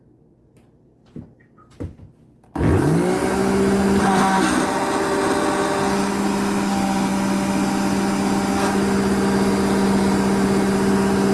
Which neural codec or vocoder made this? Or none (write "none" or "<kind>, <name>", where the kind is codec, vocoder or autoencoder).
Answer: none